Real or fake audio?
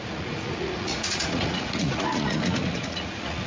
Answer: fake